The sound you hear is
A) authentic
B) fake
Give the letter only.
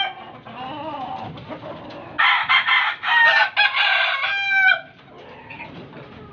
A